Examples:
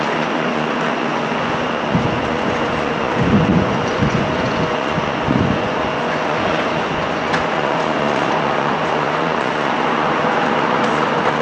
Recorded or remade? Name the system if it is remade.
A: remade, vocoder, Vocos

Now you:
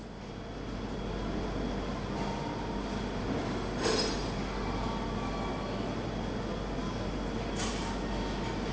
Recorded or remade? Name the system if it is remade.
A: recorded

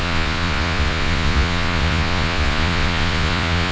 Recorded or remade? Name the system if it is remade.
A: remade, vocoder, Vocos